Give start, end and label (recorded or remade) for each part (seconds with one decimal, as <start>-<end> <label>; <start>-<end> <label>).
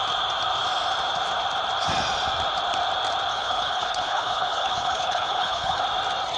0.0-3.3 recorded; 3.3-5.8 remade; 5.8-6.4 recorded